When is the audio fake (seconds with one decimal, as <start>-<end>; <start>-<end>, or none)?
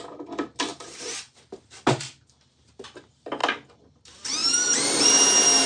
0.7-1.7; 3.4-4.0; 4.4-5.1